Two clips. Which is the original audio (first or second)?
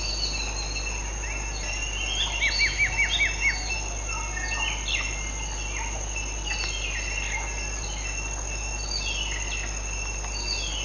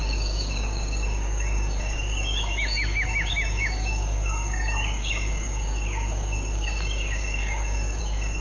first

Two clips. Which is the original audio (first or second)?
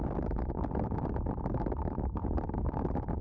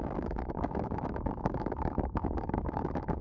first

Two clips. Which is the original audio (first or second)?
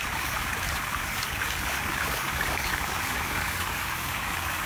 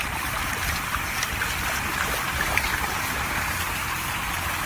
second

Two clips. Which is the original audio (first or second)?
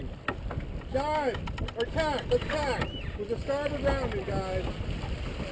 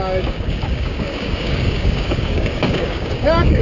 first